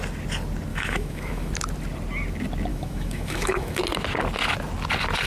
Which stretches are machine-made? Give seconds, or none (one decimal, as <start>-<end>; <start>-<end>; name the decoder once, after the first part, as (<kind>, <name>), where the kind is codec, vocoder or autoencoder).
0.7-1.5 (autoencoder, DAC-VAE); 2.7-3.8

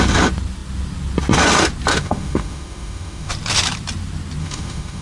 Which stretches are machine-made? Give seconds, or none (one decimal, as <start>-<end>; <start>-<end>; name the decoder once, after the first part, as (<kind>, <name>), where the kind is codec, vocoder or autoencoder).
1.9-3.3 (autoencoder, DAC-VAE); 4.4-5.0

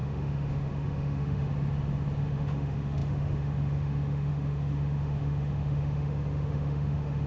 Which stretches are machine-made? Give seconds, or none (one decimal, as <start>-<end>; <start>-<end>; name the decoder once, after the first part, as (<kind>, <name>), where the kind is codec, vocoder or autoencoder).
0.0-1.5 (autoencoder, DAC-VAE); 2.2-7.3

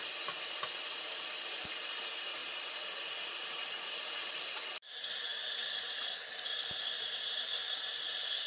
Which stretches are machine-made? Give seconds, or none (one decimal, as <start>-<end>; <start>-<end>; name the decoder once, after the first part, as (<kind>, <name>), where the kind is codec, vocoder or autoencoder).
none